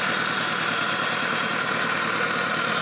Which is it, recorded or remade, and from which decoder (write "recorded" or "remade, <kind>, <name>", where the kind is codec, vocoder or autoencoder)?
recorded